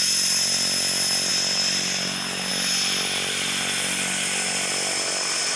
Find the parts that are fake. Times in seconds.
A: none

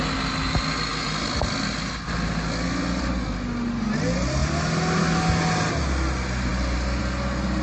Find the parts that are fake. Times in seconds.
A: none

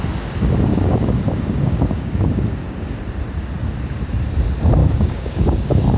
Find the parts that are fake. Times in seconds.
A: 0.7-3.0 (codec, DAC); 4.8-6.0

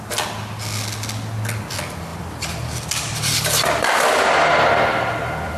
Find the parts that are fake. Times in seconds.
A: 2.1-5.6 (vocoder, BigVGAN v2)

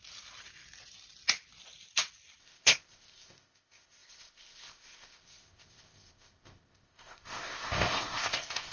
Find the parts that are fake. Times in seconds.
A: 2.4-8.7 (codec, ZipCodec)